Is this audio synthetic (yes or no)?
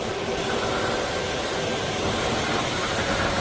no